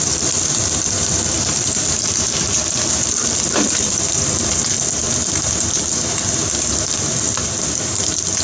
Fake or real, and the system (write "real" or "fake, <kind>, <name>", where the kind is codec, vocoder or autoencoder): fake, vocoder, BigVGAN v2